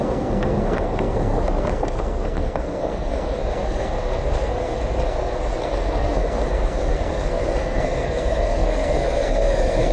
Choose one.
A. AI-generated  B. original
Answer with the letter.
A